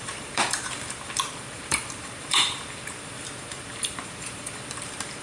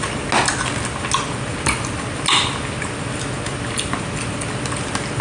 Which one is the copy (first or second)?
first